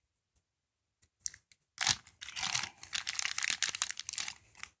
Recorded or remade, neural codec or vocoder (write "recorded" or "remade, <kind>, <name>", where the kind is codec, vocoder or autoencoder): recorded